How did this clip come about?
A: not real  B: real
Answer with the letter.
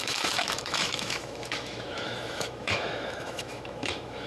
A